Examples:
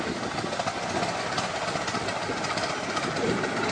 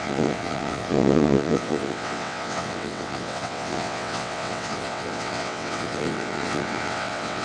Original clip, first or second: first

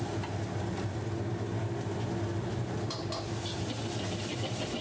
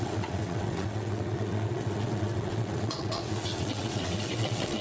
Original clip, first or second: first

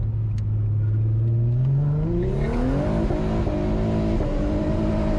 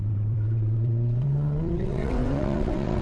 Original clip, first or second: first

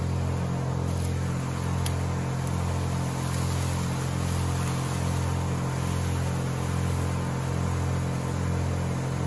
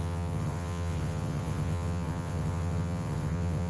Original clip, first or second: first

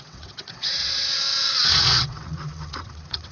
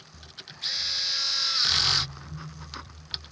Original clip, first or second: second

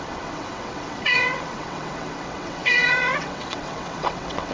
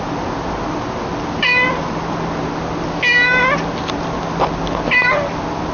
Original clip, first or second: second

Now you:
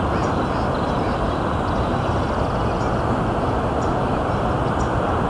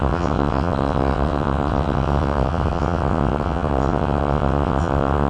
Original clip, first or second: first